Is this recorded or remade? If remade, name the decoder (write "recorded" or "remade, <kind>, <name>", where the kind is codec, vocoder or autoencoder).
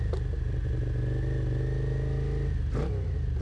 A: recorded